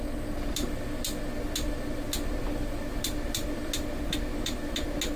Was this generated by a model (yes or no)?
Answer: no